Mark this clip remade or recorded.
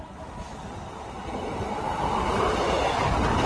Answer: recorded